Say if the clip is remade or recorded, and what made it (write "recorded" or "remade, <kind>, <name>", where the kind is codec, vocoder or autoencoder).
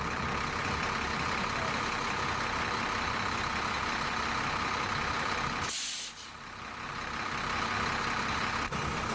recorded